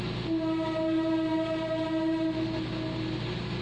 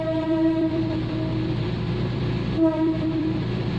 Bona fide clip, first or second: first